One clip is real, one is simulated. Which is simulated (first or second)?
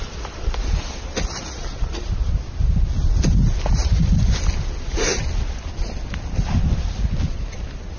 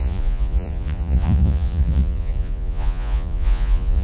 second